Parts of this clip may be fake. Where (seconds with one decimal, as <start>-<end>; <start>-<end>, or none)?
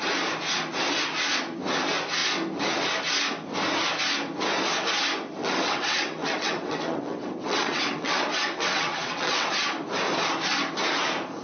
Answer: 5.4-9.5